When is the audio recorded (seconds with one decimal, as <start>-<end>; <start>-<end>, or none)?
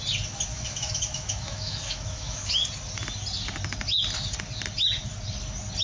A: 0.0-0.5; 2.5-5.8